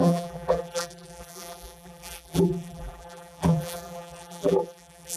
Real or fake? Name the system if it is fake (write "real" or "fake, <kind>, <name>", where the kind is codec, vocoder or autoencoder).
fake, vocoder, BigVGAN v2